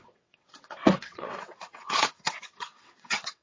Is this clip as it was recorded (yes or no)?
no